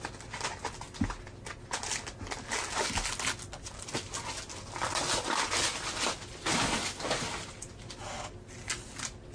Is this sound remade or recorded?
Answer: recorded